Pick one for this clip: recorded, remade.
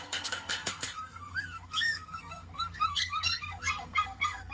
remade